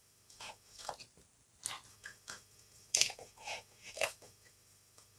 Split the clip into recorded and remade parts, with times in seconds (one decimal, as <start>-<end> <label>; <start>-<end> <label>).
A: 0.0-0.9 remade; 0.9-1.9 recorded; 1.9-5.2 remade